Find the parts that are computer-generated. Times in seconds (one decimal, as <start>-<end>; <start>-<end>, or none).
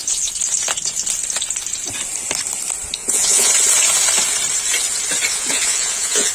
3.0-3.5; 5.3-6.3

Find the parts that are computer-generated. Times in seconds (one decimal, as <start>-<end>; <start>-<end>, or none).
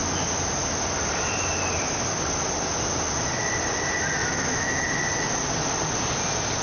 4.2-5.0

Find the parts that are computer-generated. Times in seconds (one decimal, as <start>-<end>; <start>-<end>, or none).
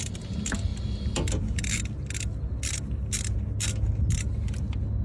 none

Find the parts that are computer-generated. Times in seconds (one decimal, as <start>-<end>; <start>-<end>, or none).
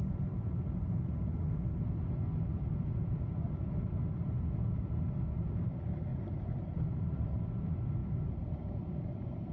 6.1-7.4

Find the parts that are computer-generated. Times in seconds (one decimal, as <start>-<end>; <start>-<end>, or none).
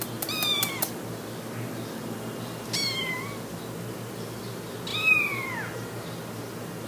4.9-5.5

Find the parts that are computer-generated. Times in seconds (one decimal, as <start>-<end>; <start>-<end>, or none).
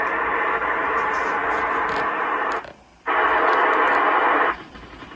0.0-1.4; 2.1-2.9; 4.2-5.2